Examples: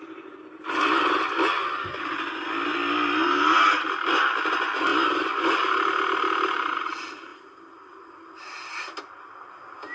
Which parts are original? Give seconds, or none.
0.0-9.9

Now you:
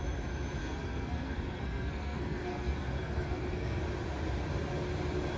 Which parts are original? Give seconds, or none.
0.0-0.6; 3.8-5.4

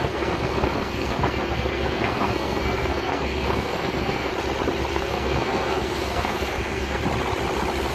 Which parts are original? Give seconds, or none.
4.3-4.9; 7.0-7.9

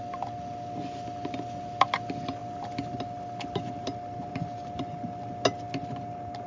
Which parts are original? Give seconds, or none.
0.0-6.5

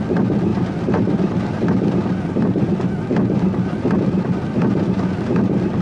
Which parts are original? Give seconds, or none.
0.0-5.8

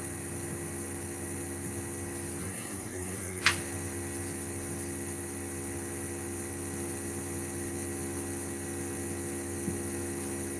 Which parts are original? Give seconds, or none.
0.0-2.4; 3.4-10.6